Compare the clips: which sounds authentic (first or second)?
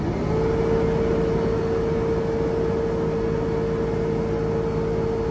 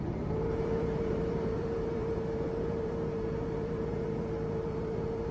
first